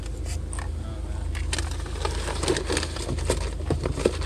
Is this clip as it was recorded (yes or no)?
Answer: yes